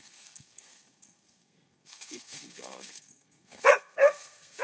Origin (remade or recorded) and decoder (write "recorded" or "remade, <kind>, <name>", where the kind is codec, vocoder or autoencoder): remade, codec, SNAC